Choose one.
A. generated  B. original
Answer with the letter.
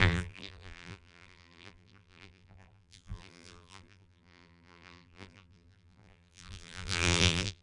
A